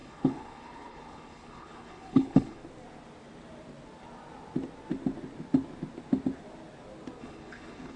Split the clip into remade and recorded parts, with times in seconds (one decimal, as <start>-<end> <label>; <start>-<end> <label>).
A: 0.0-2.6 remade; 2.6-7.2 recorded; 7.2-8.0 remade

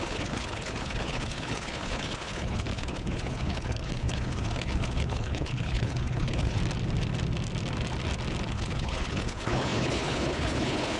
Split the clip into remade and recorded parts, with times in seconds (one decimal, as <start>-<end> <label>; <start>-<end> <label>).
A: 0.0-6.6 remade; 6.6-8.5 recorded; 8.5-11.0 remade

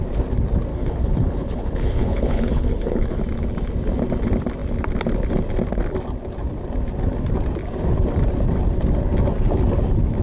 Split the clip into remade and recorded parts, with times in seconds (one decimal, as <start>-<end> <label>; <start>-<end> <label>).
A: 0.0-0.7 recorded; 0.7-3.2 remade; 3.2-10.2 recorded